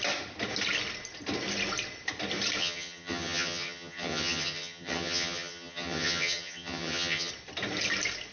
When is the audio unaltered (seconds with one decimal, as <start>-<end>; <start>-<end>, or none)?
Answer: 0.0-2.6; 7.3-8.3